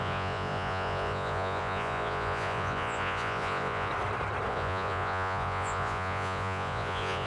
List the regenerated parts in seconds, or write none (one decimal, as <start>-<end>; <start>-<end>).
0.0-3.9; 4.5-7.3